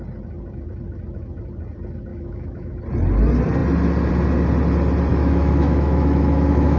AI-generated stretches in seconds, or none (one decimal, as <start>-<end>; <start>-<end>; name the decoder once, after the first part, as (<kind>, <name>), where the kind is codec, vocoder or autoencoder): 2.1-2.8 (autoencoder, DAC-VAE); 5.1-6.8